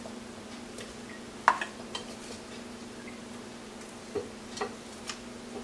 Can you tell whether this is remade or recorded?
recorded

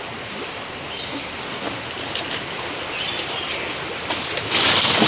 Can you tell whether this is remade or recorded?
recorded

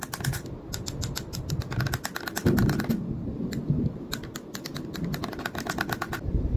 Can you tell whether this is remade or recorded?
recorded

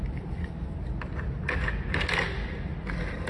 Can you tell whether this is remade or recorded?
recorded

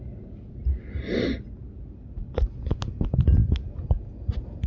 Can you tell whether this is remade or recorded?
recorded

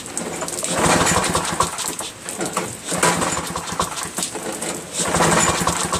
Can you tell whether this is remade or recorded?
recorded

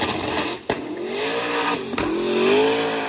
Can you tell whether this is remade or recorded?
recorded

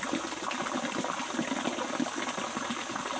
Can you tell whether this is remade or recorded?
recorded